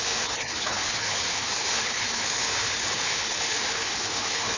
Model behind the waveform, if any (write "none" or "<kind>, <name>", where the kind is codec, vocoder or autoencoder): codec, HILCodec